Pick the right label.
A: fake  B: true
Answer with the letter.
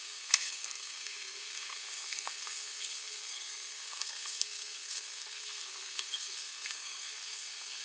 A